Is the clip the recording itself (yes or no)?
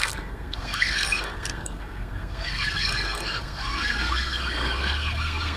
no